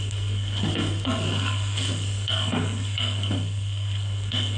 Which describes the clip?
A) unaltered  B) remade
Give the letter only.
B